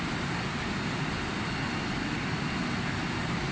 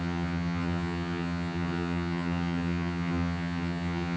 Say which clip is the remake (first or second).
second